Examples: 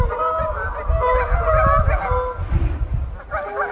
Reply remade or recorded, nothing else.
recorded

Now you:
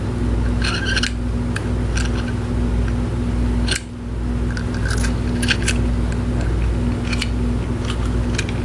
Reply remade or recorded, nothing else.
recorded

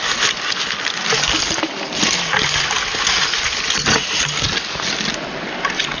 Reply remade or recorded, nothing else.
recorded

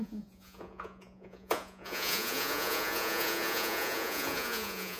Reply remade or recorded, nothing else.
remade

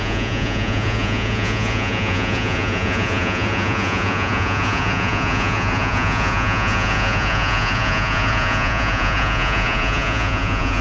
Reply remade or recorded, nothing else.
remade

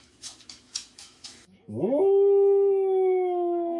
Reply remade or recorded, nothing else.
remade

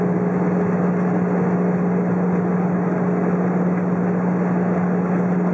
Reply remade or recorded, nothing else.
recorded